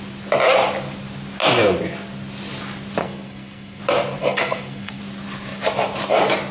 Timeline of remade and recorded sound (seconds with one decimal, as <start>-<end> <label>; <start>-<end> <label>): 0.0-3.0 recorded; 3.0-3.8 remade; 3.8-4.2 recorded; 4.2-5.0 remade; 5.0-6.5 recorded